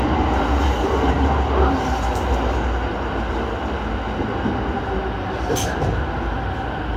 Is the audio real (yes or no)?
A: yes